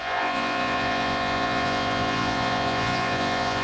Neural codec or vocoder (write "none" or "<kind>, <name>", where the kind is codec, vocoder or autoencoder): vocoder, Vocos